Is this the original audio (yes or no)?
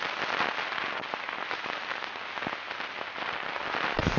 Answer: yes